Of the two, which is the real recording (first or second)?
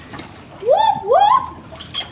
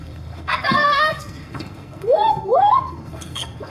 first